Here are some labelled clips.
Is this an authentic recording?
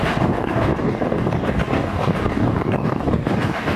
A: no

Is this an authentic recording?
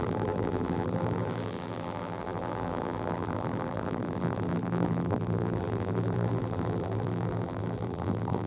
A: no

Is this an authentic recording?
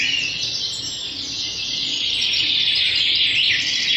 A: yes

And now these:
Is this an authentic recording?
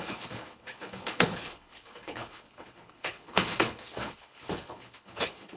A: no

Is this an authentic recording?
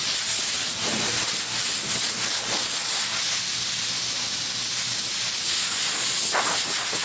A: yes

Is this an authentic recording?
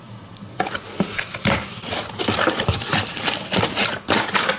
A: no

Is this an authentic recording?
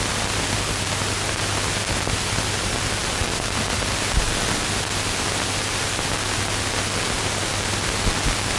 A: yes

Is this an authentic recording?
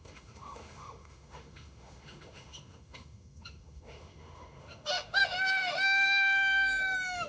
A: no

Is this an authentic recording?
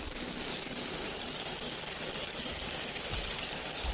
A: no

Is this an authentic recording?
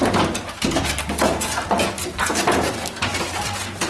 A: yes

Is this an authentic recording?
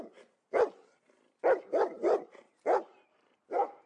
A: yes